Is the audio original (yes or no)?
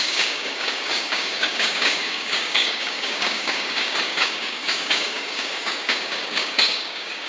no